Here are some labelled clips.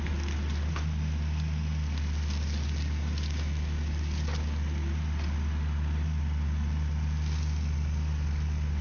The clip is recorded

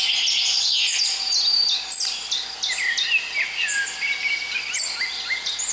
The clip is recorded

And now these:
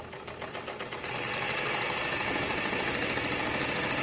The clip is recorded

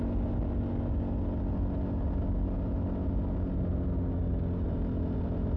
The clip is recorded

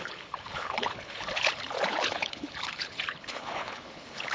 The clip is remade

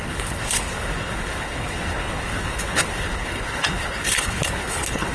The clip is remade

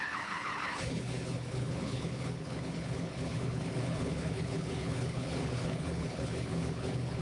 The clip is remade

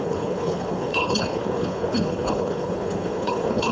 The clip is remade